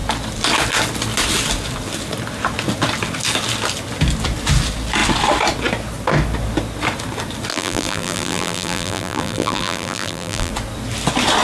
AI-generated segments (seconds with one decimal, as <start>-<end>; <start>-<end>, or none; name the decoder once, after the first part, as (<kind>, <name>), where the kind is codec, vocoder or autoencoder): 7.5-10.5 (vocoder, BigVGAN v2)

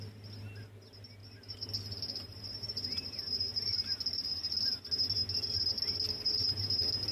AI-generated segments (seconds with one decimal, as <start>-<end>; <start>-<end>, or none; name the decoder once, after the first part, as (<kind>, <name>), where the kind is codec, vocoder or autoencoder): none

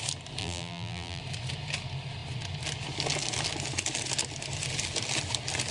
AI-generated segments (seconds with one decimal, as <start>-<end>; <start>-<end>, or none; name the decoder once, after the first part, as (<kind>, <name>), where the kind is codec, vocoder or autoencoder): 0.4-1.2 (vocoder, BigVGAN v2)

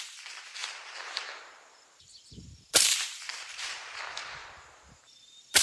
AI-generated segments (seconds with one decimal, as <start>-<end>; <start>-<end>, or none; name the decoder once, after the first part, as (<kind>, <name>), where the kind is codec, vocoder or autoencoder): 0.6-4.0 (vocoder, BigVGAN v2); 4.4-5.6

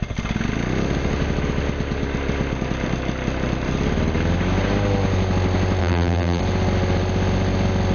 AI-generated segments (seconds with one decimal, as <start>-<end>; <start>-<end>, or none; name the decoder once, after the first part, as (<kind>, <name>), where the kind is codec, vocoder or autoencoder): 5.8-6.4 (vocoder, BigVGAN v2)